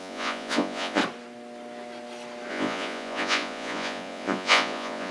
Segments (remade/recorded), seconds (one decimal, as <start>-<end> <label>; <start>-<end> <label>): 0.0-1.0 remade; 1.0-2.5 recorded; 2.5-5.1 remade